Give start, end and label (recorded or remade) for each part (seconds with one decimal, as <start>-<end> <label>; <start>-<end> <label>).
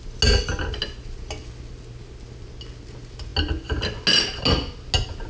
0.0-5.3 recorded